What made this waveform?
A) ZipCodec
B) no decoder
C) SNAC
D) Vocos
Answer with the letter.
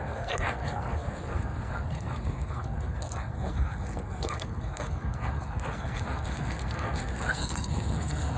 C